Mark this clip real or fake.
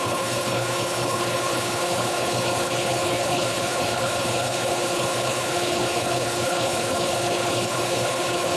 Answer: fake